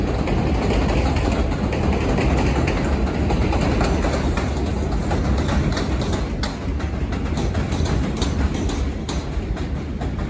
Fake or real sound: real